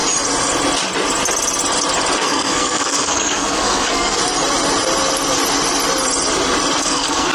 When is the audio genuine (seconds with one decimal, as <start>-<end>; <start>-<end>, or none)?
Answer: 0.0-2.2; 4.2-6.8